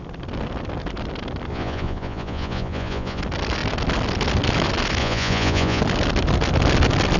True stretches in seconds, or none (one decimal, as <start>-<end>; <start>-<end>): 0.0-1.5; 3.2-5.0; 5.8-7.2